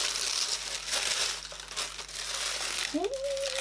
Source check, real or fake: real